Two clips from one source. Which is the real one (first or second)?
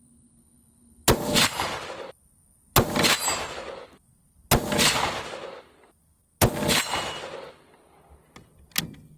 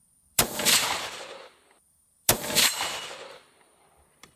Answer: first